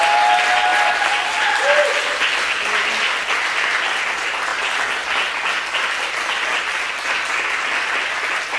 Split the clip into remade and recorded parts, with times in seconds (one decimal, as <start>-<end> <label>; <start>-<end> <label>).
0.0-8.6 recorded

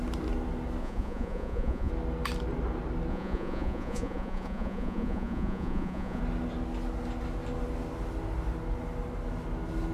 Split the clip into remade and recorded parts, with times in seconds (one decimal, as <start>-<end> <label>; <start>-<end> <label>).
0.0-0.8 recorded; 0.8-1.9 remade; 1.9-3.1 recorded; 3.1-6.2 remade; 6.2-9.9 recorded

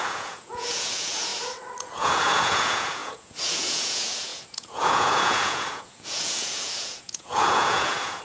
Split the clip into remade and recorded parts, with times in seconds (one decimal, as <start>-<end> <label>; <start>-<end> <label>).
0.0-1.3 remade; 1.3-1.8 recorded; 1.8-8.2 remade

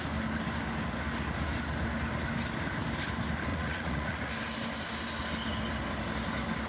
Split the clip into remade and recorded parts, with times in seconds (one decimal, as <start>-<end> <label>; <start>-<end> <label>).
0.0-3.5 recorded; 3.5-4.3 remade; 4.3-6.7 recorded

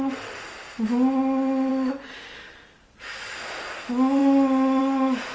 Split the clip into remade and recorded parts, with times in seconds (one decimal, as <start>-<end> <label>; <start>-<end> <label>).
0.0-5.3 recorded

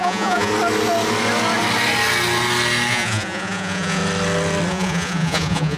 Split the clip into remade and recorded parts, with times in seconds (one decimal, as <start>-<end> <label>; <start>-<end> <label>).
0.0-0.5 remade; 0.5-2.9 recorded; 2.9-4.0 remade; 4.0-4.7 recorded; 4.7-5.8 remade

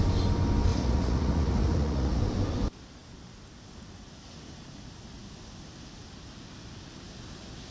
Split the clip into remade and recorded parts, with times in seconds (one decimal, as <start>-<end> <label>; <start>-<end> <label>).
0.0-0.7 recorded; 0.7-2.2 remade; 2.2-7.7 recorded